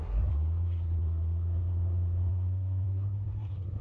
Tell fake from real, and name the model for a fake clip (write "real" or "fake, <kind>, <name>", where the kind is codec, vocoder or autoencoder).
fake, codec, SNAC